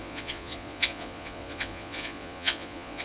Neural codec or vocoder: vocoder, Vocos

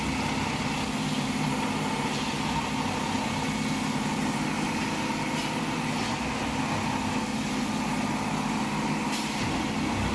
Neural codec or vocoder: none